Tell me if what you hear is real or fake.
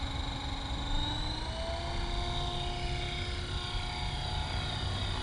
real